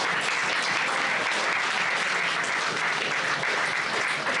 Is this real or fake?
real